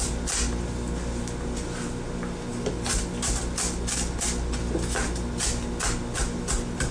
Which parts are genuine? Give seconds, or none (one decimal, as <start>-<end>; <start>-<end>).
0.0-6.9